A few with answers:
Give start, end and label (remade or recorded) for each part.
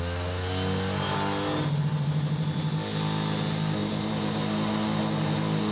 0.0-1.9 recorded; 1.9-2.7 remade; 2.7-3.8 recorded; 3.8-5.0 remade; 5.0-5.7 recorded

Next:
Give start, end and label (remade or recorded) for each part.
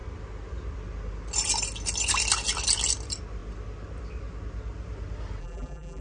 0.0-5.4 recorded; 5.4-6.0 remade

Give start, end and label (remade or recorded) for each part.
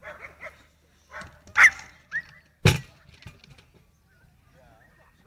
0.0-5.3 recorded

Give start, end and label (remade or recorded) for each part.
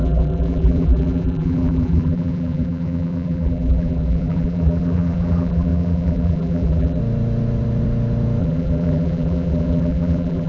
0.0-7.0 remade; 7.0-8.4 recorded; 8.4-10.5 remade